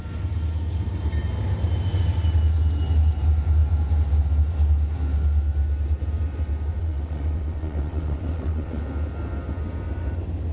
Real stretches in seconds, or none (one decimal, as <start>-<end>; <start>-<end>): 0.0-6.8; 8.8-10.5